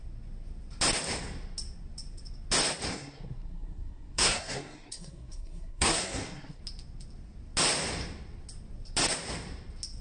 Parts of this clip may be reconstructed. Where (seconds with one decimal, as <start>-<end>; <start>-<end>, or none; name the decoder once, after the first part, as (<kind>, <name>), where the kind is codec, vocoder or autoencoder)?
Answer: 2.9-6.6 (codec, SNAC)